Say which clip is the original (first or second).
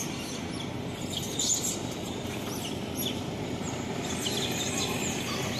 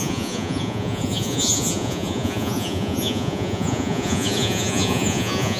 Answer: first